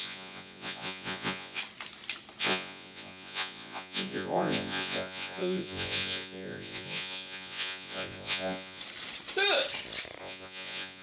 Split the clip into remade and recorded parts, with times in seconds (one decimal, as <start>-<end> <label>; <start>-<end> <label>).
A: 0.0-1.6 remade; 1.6-2.4 recorded; 2.4-8.8 remade; 8.8-10.2 recorded; 10.2-11.0 remade